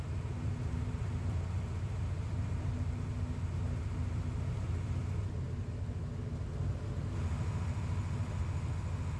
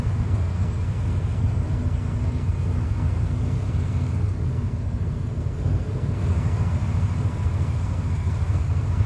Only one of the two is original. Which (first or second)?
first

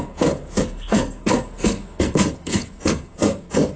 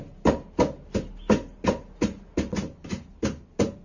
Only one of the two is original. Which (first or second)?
second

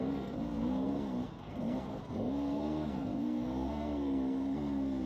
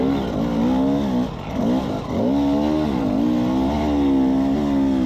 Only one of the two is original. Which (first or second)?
second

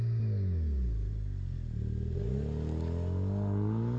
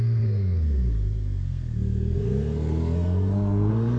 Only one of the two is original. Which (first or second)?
first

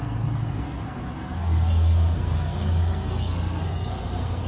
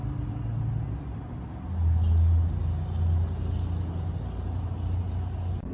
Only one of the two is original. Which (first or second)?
second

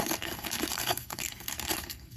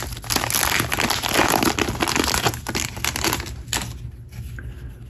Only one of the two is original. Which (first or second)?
second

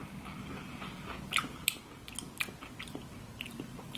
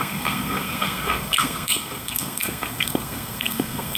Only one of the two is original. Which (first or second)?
first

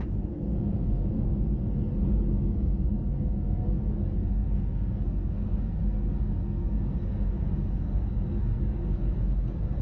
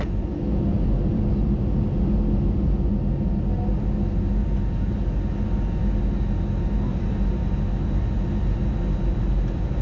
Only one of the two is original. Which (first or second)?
second